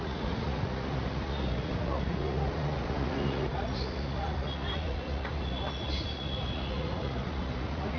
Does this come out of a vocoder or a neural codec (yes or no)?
yes